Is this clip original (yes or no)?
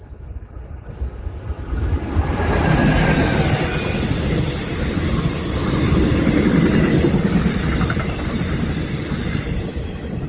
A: yes